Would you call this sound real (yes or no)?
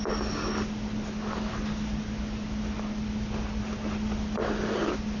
yes